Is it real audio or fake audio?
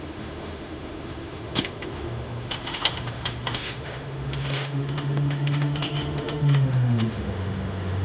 fake